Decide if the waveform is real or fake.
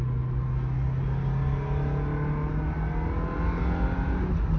real